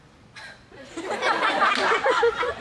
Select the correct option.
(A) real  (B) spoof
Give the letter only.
A